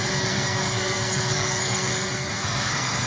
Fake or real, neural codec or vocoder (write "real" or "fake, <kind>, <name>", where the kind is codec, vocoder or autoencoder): fake, codec, SNAC